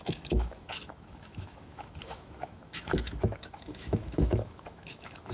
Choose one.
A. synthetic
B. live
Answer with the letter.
A